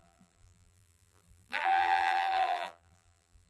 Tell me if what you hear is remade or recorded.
remade